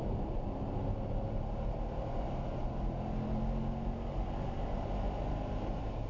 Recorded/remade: recorded